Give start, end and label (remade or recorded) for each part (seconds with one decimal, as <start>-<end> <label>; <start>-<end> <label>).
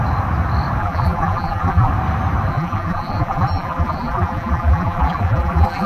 0.0-0.8 recorded; 0.8-1.9 remade; 1.9-2.5 recorded; 2.5-5.9 remade